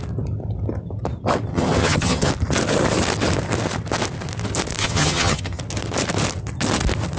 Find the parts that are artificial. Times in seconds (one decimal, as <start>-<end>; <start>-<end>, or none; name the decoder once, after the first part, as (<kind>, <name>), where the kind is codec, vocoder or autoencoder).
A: 1.5-2.3 (vocoder, HiFi-GAN); 4.8-5.6